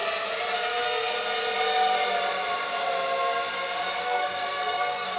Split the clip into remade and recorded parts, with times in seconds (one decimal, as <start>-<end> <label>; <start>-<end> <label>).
0.0-0.6 recorded; 0.6-1.1 remade; 1.1-4.0 recorded; 4.0-5.2 remade